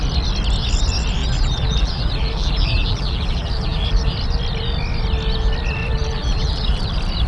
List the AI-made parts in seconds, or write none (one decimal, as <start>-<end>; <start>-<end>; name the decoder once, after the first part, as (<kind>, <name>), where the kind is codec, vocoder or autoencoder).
1.2-4.0 (vocoder, BigVGAN v2); 6.0-6.8